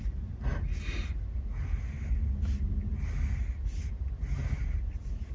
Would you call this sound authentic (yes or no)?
yes